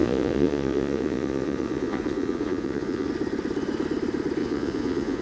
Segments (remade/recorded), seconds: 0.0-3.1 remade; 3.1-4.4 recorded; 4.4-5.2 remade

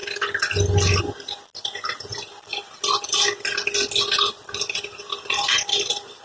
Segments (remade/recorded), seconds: 0.0-3.6 remade; 3.6-5.4 recorded; 5.4-6.2 remade

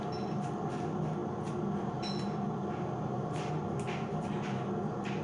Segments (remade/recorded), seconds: 0.0-5.2 recorded

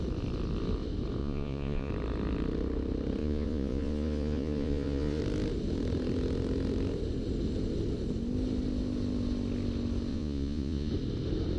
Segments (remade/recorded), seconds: 0.0-1.2 recorded; 1.2-1.9 remade; 1.9-3.2 recorded; 3.2-5.2 remade; 5.2-10.1 recorded; 10.1-10.9 remade; 10.9-11.6 recorded

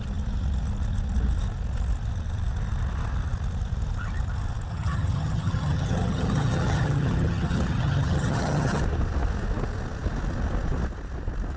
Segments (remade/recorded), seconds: 0.0-4.7 recorded; 4.7-8.8 remade; 8.8-11.6 recorded

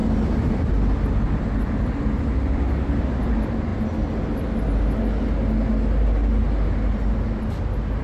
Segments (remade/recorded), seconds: 0.0-3.7 remade; 3.7-8.0 recorded